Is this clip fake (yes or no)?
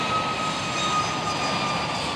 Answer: no